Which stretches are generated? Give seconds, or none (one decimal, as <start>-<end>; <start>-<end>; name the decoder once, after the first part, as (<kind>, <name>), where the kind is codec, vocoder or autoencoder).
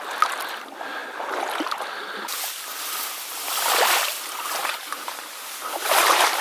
4.6-5.9 (vocoder, BigVGAN v2)